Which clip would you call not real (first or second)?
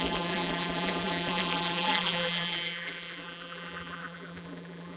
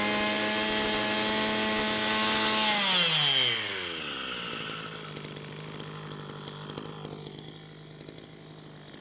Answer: first